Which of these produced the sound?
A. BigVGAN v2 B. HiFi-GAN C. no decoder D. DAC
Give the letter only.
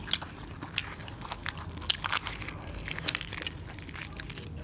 C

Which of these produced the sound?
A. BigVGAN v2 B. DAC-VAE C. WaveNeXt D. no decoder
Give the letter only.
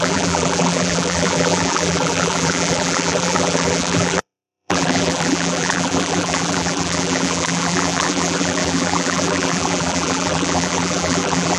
A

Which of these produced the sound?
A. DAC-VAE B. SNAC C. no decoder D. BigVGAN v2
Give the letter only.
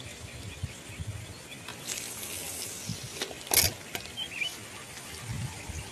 C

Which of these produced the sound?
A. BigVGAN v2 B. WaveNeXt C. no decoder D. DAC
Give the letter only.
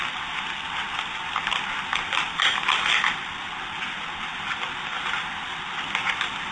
C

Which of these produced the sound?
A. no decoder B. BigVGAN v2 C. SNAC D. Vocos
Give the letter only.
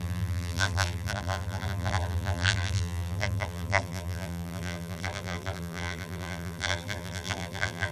B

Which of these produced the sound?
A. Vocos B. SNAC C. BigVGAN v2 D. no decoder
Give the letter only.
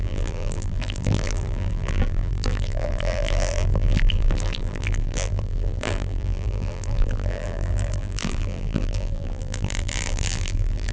C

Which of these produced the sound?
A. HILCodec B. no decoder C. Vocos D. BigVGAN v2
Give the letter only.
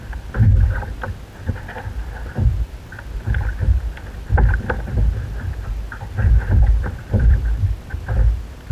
D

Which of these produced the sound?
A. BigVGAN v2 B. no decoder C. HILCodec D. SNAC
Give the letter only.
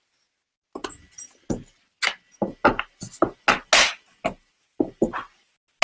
B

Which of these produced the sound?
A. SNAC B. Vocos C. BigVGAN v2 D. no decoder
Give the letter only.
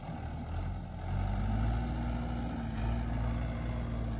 D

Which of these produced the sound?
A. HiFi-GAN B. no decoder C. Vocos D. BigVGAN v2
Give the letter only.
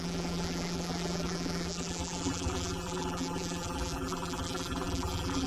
D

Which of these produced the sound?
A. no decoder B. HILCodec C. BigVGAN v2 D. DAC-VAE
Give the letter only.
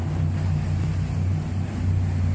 A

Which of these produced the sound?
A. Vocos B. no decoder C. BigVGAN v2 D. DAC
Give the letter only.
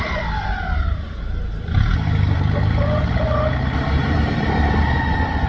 C